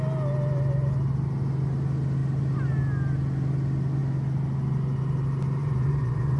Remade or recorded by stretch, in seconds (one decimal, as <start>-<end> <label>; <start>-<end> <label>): 0.0-5.6 recorded; 5.6-6.4 remade